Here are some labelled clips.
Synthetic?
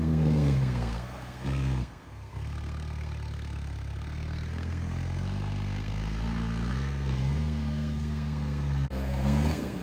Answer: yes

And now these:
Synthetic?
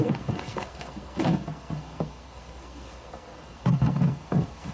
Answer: yes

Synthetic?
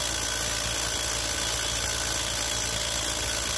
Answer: no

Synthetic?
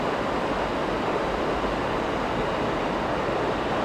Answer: no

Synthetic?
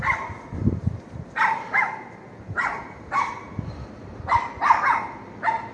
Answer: no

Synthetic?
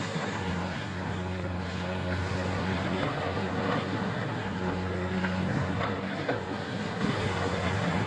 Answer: yes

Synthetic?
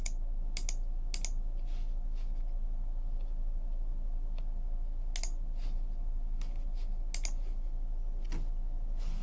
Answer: no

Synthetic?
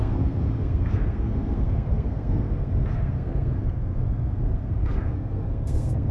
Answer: yes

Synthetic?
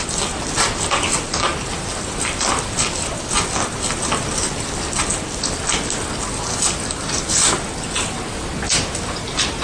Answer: no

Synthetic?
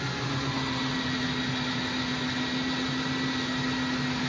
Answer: no